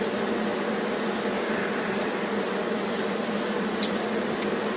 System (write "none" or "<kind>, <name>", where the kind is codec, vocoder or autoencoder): none